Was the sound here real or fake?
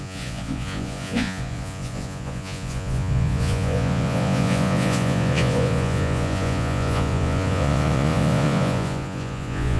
fake